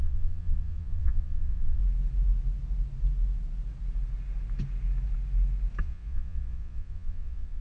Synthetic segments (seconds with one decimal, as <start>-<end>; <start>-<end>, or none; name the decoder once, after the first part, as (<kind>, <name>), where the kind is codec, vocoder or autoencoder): 0.0-1.8 (vocoder, Vocos); 5.8-7.6